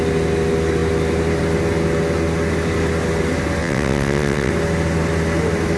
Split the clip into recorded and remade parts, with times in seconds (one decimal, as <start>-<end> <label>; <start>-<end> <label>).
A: 0.0-3.6 recorded; 3.6-4.5 remade; 4.5-5.8 recorded